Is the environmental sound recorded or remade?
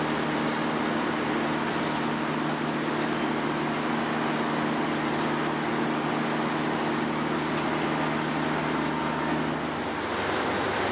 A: recorded